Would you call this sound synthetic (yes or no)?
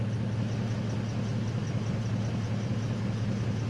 no